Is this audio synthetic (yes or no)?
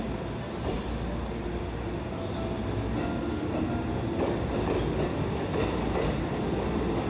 no